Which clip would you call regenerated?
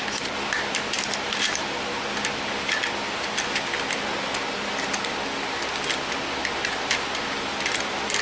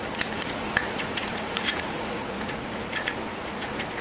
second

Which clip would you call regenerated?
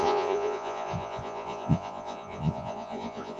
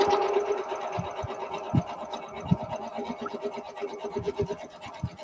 first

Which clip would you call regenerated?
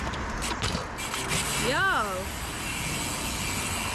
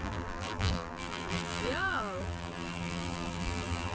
second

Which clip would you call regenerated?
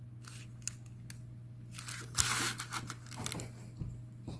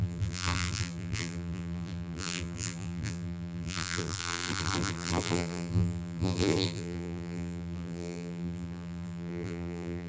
second